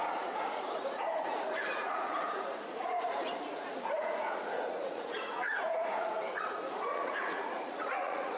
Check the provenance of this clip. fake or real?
fake